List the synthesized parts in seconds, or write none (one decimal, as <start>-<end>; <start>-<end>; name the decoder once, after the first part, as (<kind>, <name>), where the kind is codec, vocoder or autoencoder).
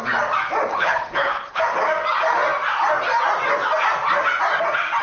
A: 0.7-1.6 (codec, HILCodec)